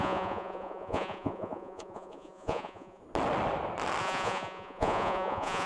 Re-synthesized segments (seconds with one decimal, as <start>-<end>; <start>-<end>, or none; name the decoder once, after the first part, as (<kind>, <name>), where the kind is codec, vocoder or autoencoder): 0.0-3.0 (vocoder, Vocos); 4.0-5.7